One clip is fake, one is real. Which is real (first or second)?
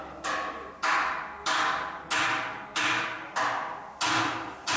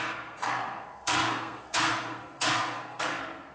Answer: first